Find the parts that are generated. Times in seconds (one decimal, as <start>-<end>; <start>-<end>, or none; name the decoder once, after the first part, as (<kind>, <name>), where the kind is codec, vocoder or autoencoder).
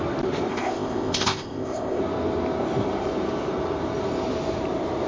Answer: 0.5-2.0 (codec, ZipCodec)